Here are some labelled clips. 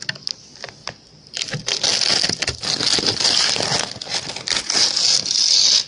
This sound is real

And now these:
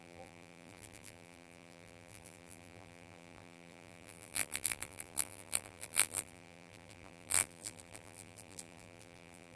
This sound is fake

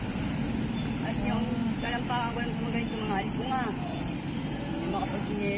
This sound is real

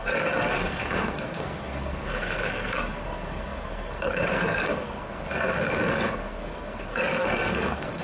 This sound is fake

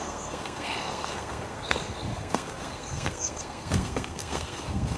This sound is fake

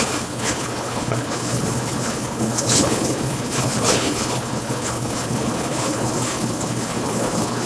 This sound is fake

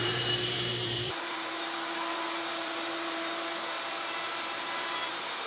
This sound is fake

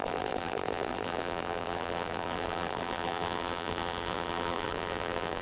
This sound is fake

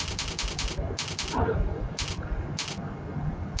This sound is real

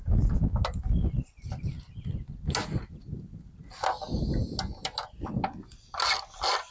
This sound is real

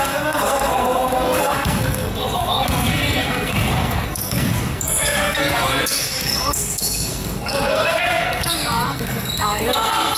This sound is fake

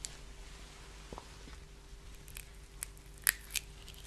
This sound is real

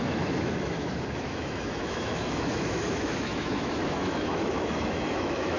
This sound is fake